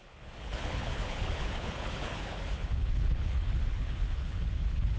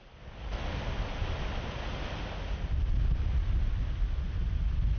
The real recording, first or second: second